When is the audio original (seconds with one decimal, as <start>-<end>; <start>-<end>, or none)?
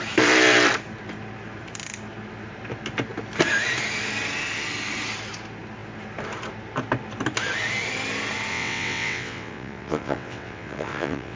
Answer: 0.0-8.5